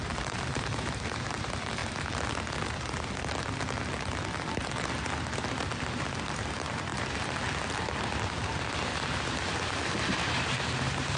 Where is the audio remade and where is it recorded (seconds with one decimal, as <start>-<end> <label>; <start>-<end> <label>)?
0.0-1.8 remade; 1.8-6.3 recorded; 6.3-6.9 remade; 6.9-8.3 recorded; 8.3-8.9 remade; 8.9-10.0 recorded; 10.0-11.2 remade